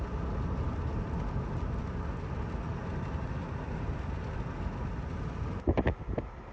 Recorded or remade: recorded